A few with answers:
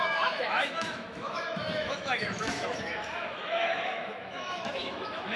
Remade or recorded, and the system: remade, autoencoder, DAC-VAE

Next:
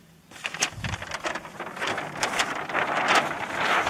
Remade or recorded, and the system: recorded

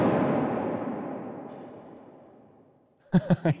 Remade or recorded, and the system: recorded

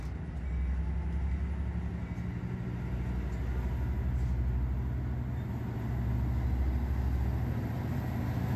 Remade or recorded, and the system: recorded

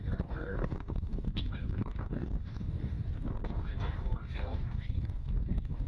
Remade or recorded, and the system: remade, codec, DAC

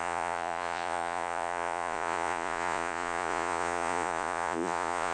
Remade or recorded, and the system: remade, vocoder, Vocos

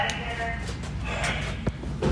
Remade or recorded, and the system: recorded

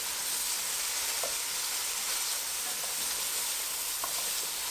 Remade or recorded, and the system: recorded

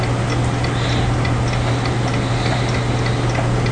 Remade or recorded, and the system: recorded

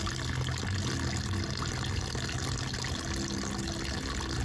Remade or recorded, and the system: recorded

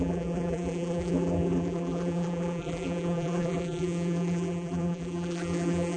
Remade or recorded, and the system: remade, vocoder, BigVGAN v2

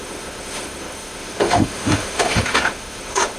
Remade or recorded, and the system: remade, autoencoder, DAC-VAE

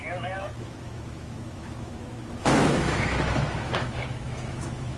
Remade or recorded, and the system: remade, autoencoder, DAC-VAE